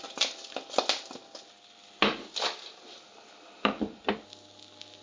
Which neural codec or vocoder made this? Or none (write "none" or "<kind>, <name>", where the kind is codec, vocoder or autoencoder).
none